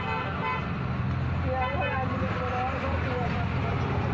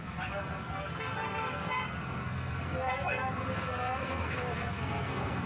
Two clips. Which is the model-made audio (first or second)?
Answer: second